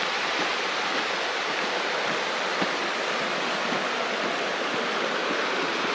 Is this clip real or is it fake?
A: real